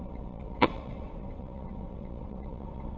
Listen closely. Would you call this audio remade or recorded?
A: remade